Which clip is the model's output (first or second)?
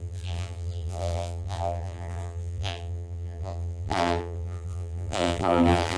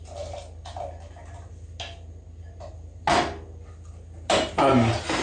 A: first